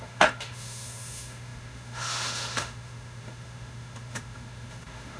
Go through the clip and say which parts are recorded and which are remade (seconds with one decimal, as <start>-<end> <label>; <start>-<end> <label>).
0.0-5.2 remade